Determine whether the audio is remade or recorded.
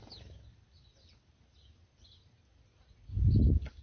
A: recorded